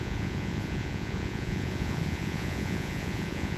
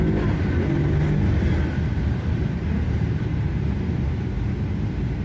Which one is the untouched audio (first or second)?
second